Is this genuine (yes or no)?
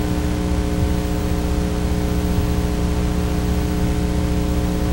yes